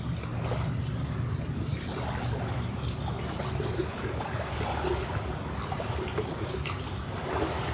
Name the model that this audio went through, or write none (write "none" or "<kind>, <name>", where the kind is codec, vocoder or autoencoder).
none